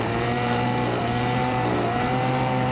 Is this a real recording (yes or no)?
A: no